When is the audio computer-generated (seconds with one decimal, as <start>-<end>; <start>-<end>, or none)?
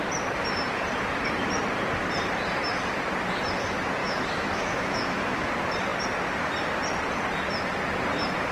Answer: 4.0-5.5